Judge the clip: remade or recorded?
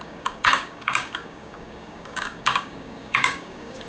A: remade